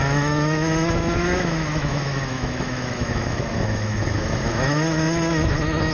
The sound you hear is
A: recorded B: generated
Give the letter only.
B